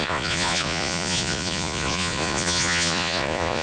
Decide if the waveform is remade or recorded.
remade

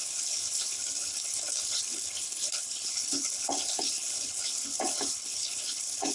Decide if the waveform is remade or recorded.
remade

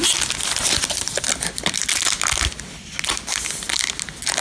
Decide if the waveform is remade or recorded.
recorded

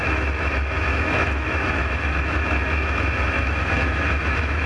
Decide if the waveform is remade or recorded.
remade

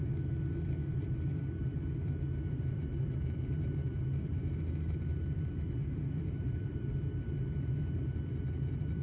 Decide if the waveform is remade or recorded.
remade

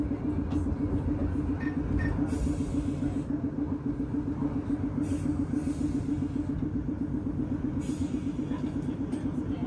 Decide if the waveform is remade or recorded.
recorded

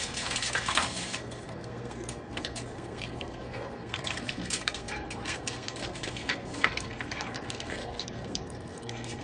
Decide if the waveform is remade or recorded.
remade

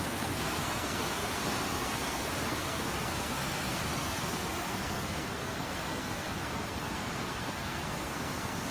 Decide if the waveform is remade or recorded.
remade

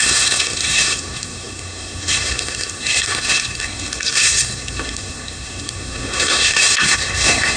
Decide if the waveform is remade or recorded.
remade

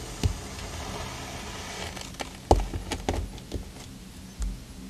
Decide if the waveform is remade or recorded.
recorded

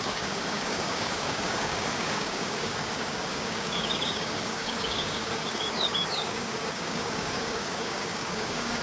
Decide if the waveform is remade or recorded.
remade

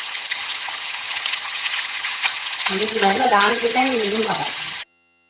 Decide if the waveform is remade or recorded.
remade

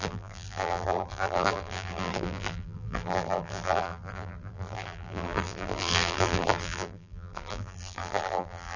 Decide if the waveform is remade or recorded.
remade